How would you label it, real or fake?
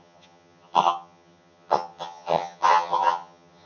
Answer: fake